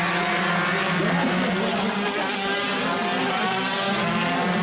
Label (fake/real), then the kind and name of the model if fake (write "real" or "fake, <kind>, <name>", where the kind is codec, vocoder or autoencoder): real